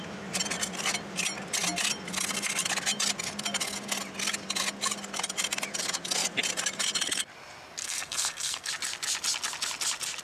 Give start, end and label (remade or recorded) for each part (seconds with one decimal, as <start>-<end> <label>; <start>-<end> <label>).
0.0-7.8 recorded; 7.8-8.7 remade; 8.7-10.2 recorded